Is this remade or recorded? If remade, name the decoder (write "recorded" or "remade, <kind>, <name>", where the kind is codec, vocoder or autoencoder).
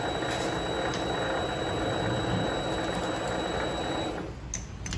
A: recorded